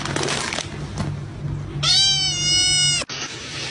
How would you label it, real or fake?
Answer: real